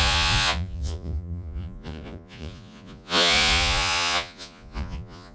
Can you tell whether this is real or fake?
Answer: fake